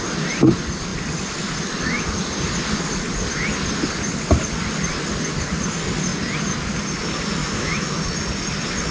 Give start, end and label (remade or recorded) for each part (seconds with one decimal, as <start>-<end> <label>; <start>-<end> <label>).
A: 0.0-7.4 recorded; 7.4-8.0 remade; 8.0-8.9 recorded